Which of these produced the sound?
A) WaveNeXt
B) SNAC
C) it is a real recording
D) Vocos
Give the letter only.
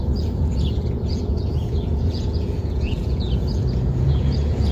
D